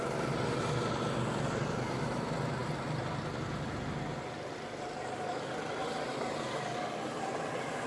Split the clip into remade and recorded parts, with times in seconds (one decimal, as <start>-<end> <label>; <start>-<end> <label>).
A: 0.0-7.9 recorded